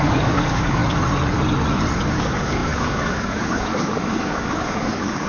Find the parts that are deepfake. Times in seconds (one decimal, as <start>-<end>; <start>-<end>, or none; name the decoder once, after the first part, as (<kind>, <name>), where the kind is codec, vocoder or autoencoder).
0.0-0.8 (codec, DAC); 2.1-5.3